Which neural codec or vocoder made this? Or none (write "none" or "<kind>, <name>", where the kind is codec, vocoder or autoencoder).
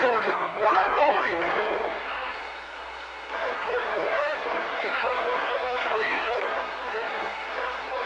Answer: codec, SNAC